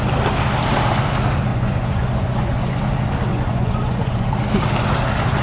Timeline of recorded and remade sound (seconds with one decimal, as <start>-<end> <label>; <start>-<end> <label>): 0.0-1.5 recorded; 1.5-2.8 remade; 2.8-3.3 recorded; 3.3-4.3 remade; 4.3-5.4 recorded